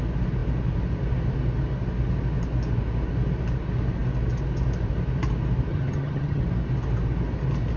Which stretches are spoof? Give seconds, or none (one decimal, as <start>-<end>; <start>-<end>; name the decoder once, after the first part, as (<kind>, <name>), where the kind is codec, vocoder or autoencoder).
5.7-6.4 (vocoder, HiFi-GAN)